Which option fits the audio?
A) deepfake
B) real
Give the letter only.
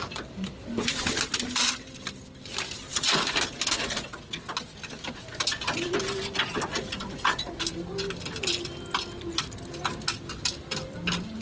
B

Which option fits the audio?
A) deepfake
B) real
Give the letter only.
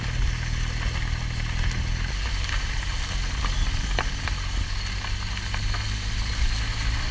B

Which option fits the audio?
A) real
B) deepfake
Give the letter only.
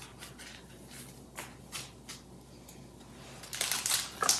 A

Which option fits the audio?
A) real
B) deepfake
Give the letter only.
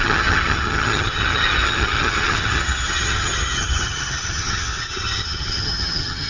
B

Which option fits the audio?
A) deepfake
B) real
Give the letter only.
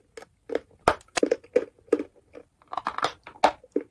B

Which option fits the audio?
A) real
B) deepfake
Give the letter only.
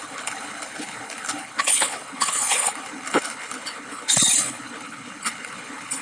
B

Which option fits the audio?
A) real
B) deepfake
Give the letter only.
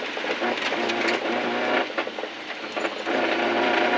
A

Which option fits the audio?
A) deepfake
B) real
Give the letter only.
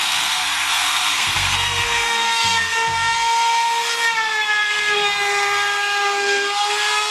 A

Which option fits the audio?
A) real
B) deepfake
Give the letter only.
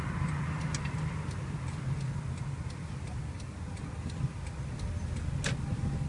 A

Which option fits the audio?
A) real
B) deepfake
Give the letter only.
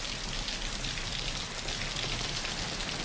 A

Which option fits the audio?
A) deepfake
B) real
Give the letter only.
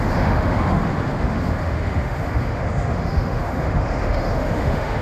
A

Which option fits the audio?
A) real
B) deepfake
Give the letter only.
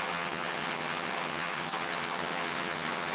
B